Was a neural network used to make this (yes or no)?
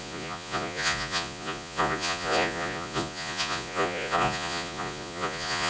yes